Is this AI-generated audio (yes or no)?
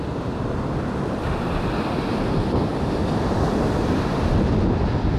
no